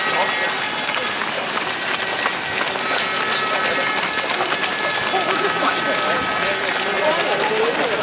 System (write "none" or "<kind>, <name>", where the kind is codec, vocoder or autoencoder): none